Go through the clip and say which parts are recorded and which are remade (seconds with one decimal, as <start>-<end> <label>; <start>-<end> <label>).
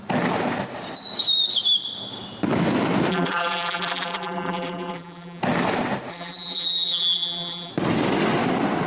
0.0-3.1 recorded; 3.1-5.4 remade; 5.4-6.1 recorded; 6.1-7.7 remade; 7.7-8.9 recorded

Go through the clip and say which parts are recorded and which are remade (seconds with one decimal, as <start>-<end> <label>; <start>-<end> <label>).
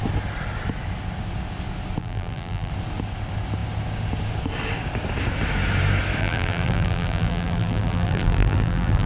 0.0-2.0 recorded; 2.0-2.7 remade; 2.7-6.2 recorded; 6.2-9.1 remade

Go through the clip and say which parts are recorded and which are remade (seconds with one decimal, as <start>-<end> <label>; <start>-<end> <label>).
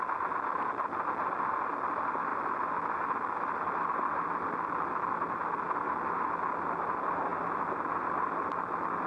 0.0-9.1 recorded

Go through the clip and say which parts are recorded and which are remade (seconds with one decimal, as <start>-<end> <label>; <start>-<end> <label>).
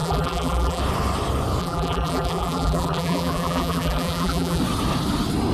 0.0-0.8 remade; 0.8-1.6 recorded; 1.6-4.6 remade; 4.6-5.5 recorded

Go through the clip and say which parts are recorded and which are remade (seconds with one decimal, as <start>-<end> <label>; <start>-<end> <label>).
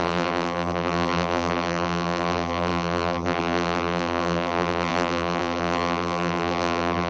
0.0-7.1 remade